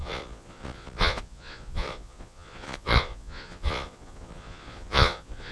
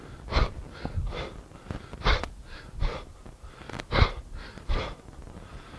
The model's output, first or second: first